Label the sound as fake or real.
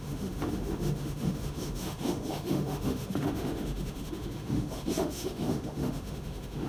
fake